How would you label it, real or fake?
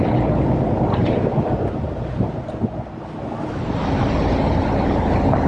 real